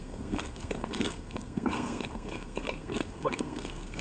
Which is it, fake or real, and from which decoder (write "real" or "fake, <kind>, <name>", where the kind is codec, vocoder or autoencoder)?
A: fake, codec, SNAC